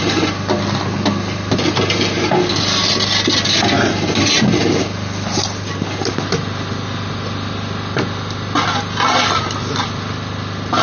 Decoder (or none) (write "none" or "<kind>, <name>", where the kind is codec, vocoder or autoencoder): none